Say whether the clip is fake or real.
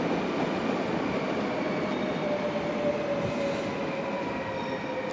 real